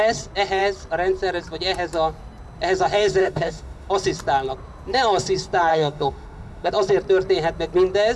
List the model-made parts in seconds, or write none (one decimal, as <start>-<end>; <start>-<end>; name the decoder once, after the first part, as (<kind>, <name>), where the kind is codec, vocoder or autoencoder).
3.2-3.9 (autoencoder, DAC-VAE); 5.7-6.7